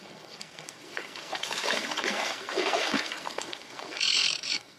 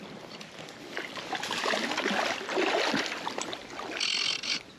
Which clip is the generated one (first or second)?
first